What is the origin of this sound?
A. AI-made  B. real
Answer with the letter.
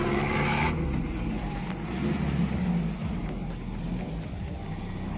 B